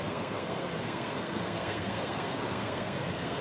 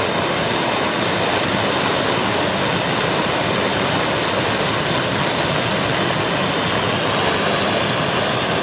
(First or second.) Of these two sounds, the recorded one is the second